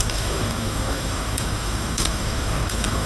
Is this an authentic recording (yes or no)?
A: no